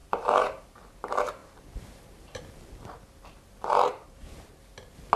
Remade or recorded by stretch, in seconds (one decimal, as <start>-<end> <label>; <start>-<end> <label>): 0.0-0.9 remade; 0.9-1.4 recorded; 1.4-2.4 remade; 2.4-3.9 recorded; 3.9-4.6 remade; 4.6-5.2 recorded